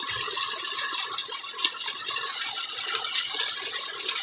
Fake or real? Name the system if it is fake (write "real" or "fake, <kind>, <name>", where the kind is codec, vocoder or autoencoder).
real